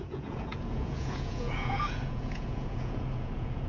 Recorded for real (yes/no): no